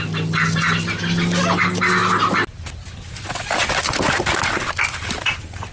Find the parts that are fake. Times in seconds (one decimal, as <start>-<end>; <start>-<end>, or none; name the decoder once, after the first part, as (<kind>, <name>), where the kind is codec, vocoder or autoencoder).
none